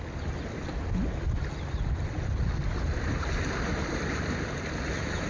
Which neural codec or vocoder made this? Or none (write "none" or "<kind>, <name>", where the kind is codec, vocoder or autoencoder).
none